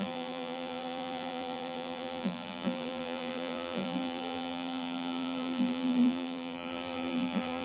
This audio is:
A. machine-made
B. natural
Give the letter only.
A